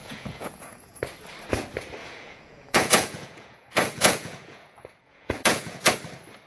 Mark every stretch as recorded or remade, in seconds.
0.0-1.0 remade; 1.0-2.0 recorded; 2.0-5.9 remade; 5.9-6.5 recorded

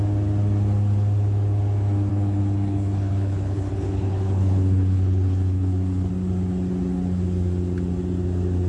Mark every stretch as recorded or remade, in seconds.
0.0-2.1 recorded; 2.1-6.1 remade; 6.1-8.7 recorded

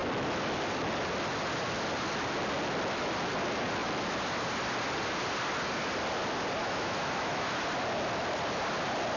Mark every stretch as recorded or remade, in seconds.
0.0-6.6 recorded; 6.6-7.6 remade; 7.6-9.2 recorded

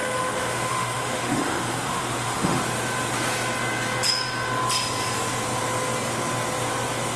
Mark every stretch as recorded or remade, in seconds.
0.0-2.6 remade; 2.6-7.2 recorded